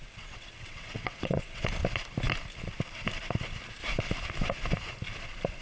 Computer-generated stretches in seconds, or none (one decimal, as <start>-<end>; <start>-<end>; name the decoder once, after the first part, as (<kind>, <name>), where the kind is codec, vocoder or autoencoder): 0.0-1.8 (vocoder, WaveNeXt)